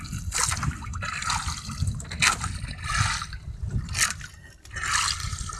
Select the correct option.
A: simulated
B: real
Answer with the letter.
B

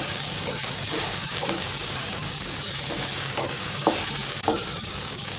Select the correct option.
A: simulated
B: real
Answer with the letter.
A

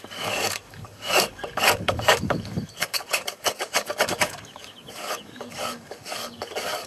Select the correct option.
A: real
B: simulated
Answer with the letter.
B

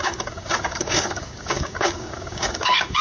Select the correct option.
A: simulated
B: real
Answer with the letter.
A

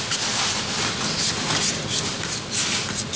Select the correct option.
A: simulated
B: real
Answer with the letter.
B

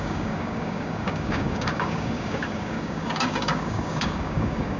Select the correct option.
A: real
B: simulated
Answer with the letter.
B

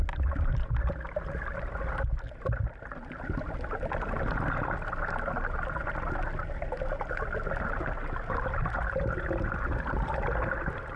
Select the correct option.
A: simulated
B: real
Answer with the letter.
B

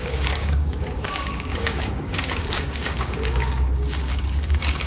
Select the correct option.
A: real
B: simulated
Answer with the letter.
B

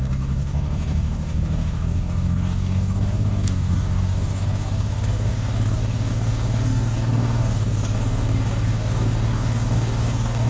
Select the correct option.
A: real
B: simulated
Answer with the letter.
B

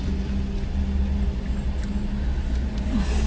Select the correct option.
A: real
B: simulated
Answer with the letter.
A